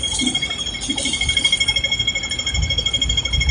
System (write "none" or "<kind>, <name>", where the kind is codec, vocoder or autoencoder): vocoder, BigVGAN v2